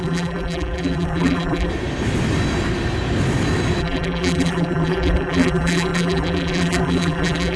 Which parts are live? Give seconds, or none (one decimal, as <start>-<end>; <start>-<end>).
1.7-3.8